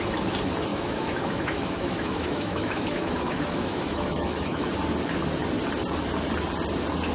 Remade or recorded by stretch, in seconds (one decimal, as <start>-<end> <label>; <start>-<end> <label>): 0.0-0.7 recorded; 0.7-4.7 remade; 4.7-7.1 recorded